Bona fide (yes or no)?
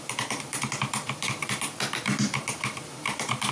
no